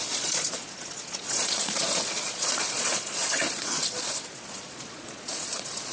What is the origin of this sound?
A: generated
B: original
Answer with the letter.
A